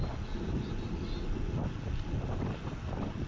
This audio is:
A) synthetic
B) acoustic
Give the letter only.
B